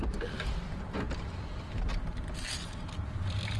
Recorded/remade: recorded